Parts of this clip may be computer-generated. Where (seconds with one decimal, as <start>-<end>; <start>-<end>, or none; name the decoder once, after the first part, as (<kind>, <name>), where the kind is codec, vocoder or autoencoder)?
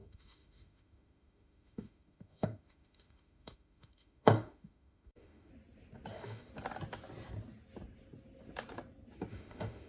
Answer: 0.0-5.5 (autoencoder, DAC-VAE); 6.1-6.5; 9.3-9.9